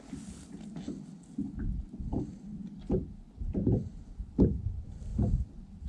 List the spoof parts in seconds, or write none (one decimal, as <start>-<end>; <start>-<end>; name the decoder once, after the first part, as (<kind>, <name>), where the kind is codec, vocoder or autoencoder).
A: none